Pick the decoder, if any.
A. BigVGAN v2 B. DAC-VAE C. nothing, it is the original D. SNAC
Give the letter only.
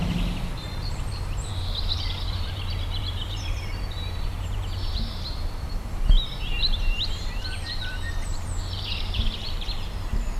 A